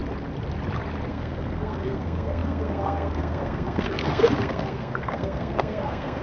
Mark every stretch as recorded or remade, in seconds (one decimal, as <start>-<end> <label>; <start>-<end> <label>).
0.0-1.1 recorded; 1.1-6.2 remade